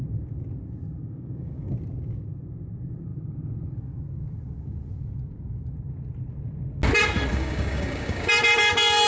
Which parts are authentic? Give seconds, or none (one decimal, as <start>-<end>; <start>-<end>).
0.0-1.0; 1.7-7.3; 8.3-9.1